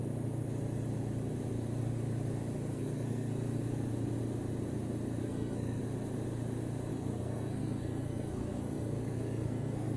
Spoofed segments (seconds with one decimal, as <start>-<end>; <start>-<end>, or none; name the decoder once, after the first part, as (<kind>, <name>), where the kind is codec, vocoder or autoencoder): 2.7-3.3 (codec, SNAC); 5.2-5.8; 6.9-10.0